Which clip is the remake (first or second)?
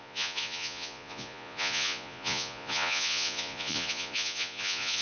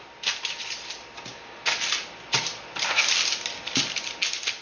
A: first